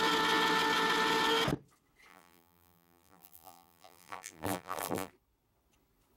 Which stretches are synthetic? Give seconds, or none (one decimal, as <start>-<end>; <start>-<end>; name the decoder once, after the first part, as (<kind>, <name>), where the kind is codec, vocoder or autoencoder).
2.1-5.1 (vocoder, BigVGAN v2)